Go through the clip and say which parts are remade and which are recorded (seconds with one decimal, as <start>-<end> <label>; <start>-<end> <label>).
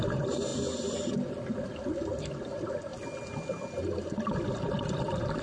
0.0-5.4 recorded